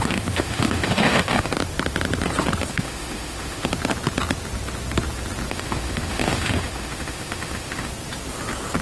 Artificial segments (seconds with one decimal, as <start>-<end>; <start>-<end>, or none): 0.0-1.5; 2.7-3.7; 5.5-7.9